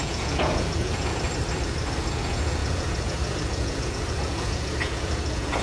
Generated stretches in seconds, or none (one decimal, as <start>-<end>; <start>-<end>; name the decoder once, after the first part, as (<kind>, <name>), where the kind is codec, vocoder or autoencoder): 0.0-1.1 (vocoder, Vocos); 2.1-5.6